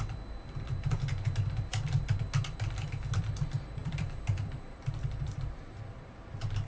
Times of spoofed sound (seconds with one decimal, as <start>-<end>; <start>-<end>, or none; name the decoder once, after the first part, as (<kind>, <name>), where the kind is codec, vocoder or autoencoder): 3.8-5.7 (vocoder, BigVGAN v2)